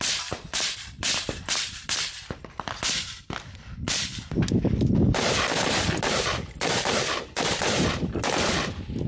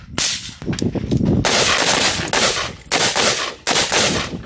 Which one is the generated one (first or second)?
first